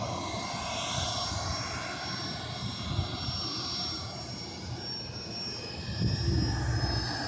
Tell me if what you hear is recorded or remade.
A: recorded